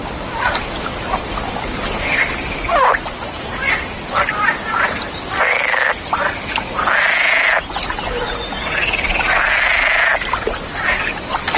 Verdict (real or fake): real